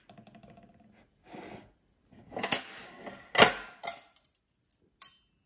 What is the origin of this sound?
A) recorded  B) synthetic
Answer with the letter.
A